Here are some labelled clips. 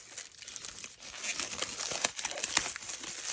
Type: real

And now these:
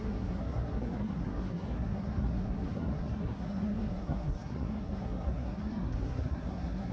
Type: fake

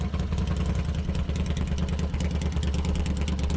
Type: real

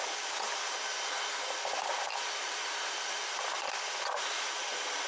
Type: real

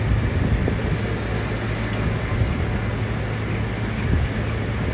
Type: real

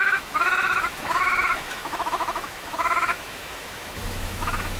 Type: fake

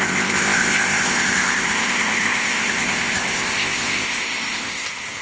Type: fake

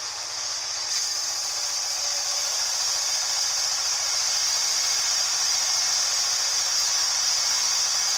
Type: real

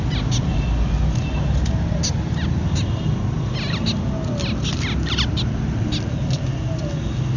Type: real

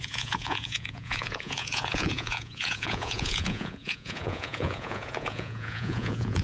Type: fake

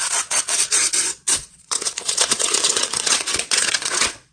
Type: fake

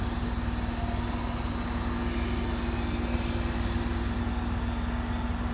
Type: real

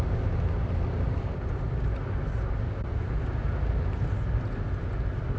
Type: real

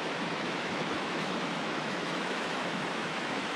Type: fake